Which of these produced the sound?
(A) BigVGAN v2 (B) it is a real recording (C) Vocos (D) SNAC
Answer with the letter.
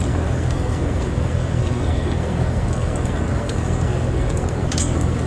D